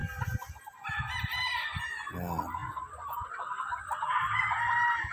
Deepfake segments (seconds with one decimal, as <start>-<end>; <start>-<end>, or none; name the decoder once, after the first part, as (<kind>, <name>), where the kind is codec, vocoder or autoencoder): none